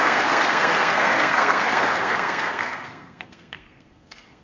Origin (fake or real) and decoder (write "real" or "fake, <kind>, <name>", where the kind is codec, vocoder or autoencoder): fake, codec, SNAC